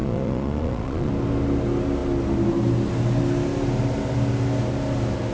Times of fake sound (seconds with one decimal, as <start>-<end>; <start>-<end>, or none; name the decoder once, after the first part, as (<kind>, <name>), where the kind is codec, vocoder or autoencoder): 0.0-1.1 (vocoder, Vocos)